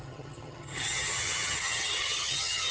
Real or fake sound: fake